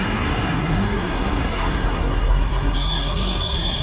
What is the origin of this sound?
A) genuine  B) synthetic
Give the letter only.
B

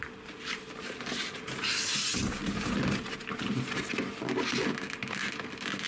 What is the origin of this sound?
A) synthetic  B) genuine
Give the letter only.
B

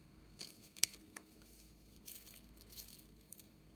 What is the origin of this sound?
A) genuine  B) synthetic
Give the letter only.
B